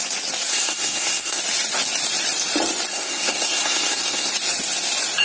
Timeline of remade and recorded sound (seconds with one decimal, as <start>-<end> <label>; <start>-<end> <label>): 0.0-0.5 recorded; 0.5-1.4 remade; 1.4-2.9 recorded; 2.9-4.3 remade; 4.3-5.2 recorded